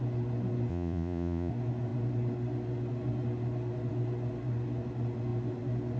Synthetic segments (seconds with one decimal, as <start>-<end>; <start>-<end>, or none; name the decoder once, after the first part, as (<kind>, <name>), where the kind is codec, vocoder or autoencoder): 0.7-1.5 (vocoder, Vocos)